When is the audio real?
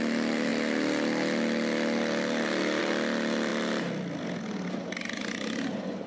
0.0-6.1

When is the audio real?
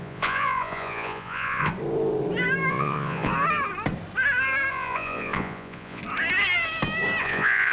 1.7-2.7; 3.3-4.7; 6.0-7.2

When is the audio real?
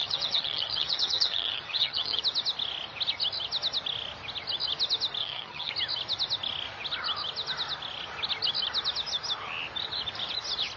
2.2-5.2; 5.7-10.8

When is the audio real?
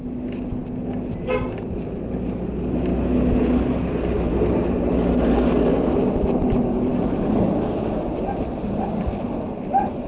0.0-10.1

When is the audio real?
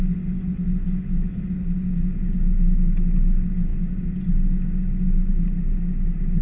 0.0-6.4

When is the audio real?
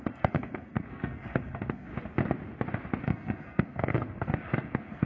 1.9-3.0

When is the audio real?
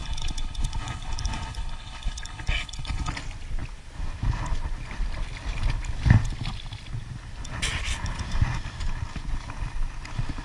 3.1-10.4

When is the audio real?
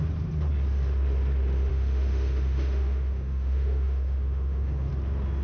0.0-1.7; 4.9-5.4